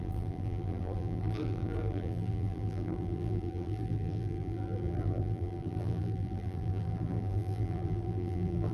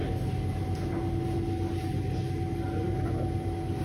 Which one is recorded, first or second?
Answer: second